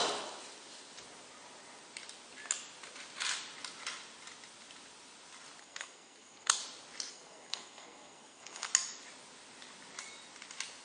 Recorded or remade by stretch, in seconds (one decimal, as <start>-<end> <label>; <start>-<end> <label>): 0.0-5.6 recorded; 5.6-6.6 remade; 6.6-7.1 recorded; 7.1-8.7 remade; 8.7-10.8 recorded

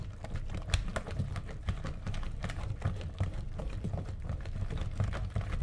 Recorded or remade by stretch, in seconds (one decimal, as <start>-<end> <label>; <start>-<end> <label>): 0.0-5.6 recorded

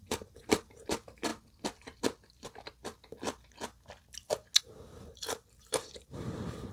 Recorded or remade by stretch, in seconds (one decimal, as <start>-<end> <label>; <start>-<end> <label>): 0.0-1.3 remade; 1.3-4.6 recorded; 4.6-6.7 remade